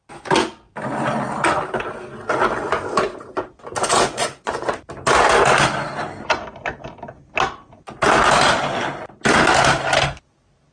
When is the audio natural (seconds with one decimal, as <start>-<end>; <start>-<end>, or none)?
0.0-3.9; 4.8-10.7